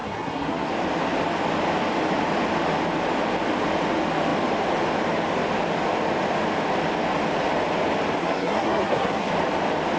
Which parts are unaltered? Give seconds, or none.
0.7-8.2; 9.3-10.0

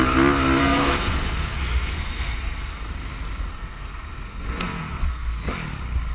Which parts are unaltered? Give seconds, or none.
0.0-0.6; 2.8-3.5; 5.5-6.1

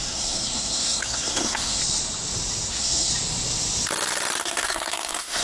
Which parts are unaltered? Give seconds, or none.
1.8-2.7; 3.1-4.4

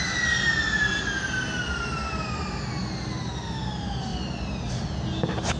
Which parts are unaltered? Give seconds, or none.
0.0-5.6